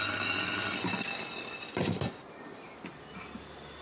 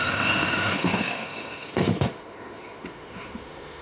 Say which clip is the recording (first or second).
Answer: first